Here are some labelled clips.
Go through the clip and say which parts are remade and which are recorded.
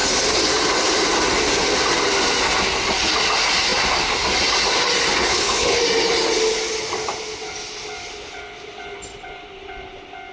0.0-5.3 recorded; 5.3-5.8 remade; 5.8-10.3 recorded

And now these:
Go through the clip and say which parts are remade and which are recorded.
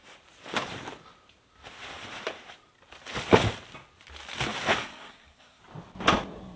0.0-4.8 recorded; 4.8-5.6 remade; 5.6-6.6 recorded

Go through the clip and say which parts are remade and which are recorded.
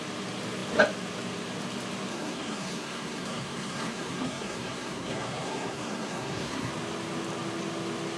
0.0-2.1 recorded; 2.1-6.7 remade; 6.7-8.2 recorded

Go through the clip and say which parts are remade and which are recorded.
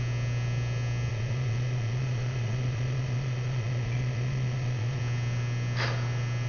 0.0-1.1 recorded; 1.1-5.0 remade; 5.0-6.5 recorded